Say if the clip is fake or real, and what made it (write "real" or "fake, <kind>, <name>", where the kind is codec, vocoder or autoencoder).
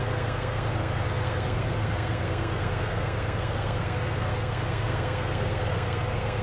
fake, codec, SNAC